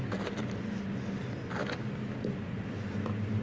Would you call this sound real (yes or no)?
yes